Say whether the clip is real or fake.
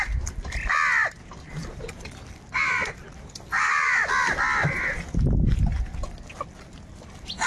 real